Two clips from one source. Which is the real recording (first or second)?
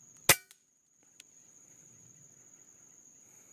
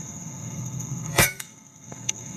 first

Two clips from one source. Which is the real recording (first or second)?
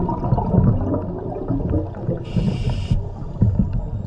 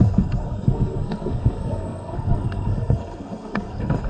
first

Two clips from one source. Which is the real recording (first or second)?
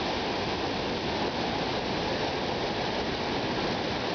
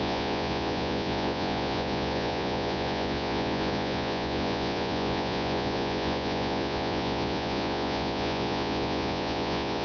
first